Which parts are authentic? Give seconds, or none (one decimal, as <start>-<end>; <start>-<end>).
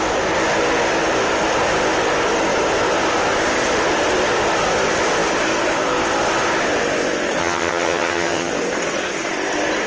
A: 0.0-7.4; 8.5-9.9